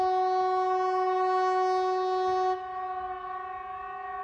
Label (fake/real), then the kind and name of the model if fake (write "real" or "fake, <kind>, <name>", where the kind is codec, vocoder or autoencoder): real